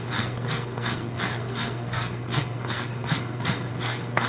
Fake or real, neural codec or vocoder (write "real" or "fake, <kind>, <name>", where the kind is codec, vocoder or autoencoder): fake, codec, SNAC